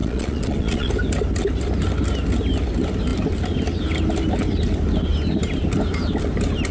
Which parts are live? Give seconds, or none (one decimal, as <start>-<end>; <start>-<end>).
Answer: 0.9-6.7